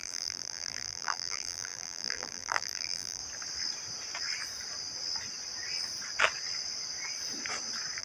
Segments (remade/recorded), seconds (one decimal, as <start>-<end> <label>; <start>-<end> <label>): 0.0-3.2 remade; 3.2-8.0 recorded